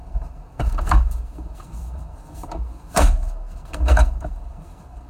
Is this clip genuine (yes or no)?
no